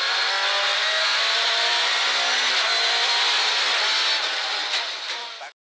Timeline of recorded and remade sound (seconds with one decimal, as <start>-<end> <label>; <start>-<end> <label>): 0.0-5.8 recorded